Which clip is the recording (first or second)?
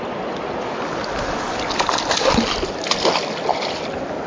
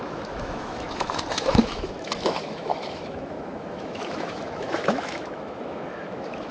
first